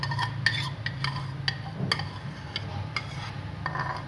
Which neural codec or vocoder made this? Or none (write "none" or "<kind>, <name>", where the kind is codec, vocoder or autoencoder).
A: none